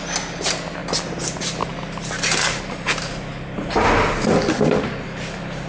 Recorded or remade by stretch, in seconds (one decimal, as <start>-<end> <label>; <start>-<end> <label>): 0.0-5.7 recorded